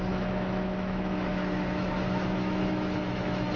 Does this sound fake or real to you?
fake